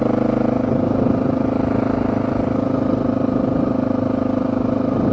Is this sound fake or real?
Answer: real